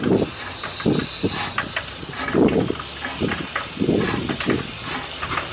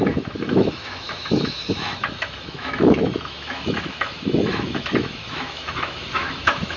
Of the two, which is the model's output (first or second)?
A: second